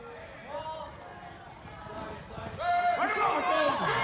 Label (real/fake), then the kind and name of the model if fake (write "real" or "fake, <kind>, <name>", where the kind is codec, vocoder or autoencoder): real